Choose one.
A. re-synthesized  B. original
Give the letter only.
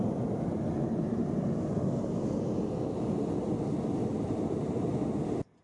B